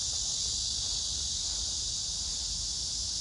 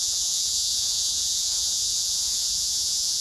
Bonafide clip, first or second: first